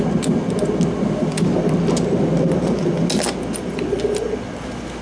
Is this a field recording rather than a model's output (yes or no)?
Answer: yes